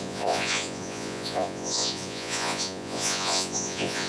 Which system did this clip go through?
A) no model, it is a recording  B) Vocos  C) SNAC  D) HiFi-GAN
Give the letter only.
B